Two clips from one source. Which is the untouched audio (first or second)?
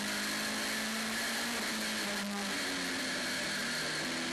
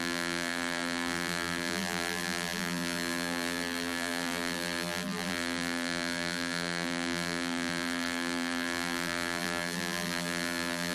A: first